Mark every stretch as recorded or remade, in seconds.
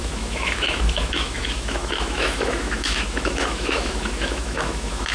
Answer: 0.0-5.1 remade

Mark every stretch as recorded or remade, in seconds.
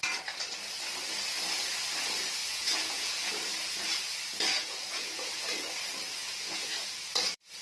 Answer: 0.0-2.4 recorded; 2.4-3.3 remade; 3.3-4.5 recorded; 4.5-5.4 remade; 5.4-6.2 recorded; 6.2-7.6 remade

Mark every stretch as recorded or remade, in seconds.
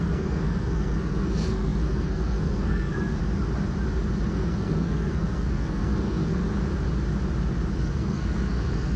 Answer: 0.0-3.2 remade; 3.2-4.3 recorded; 4.3-6.4 remade; 6.4-7.8 recorded; 7.8-9.0 remade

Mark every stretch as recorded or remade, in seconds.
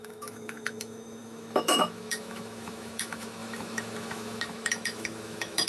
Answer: 0.0-5.7 remade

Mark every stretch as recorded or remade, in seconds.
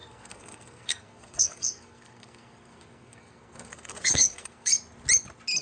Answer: 0.0-4.7 remade; 4.7-5.6 recorded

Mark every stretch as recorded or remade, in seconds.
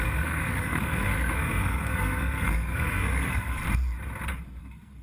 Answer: 0.0-3.6 remade; 3.6-4.6 recorded; 4.6-5.0 remade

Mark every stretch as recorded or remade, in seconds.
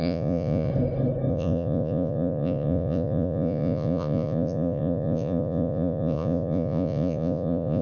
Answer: 0.0-0.7 remade; 0.7-1.3 recorded; 1.3-7.8 remade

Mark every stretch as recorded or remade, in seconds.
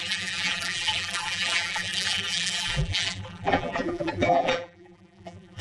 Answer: 0.0-5.6 remade